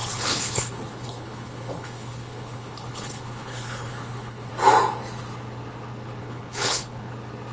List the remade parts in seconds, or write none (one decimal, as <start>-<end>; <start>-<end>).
0.0-4.5; 6.2-7.1